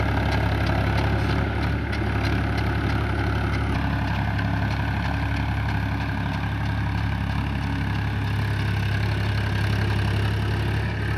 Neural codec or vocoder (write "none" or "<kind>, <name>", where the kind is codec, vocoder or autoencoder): none